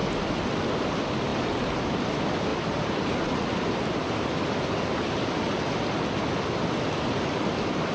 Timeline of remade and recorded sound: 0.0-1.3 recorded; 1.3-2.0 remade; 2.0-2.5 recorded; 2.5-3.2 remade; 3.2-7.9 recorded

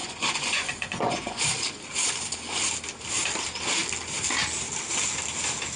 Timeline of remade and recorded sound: 0.0-1.4 remade; 1.4-5.8 recorded